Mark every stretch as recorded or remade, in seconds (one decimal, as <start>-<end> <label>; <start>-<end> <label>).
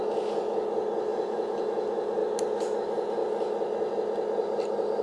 0.0-1.1 recorded; 1.1-1.6 remade; 1.6-5.0 recorded